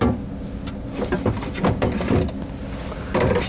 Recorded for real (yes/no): yes